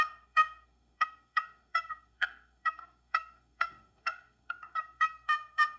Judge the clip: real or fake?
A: fake